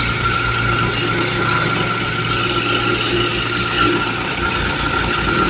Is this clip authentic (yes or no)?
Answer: yes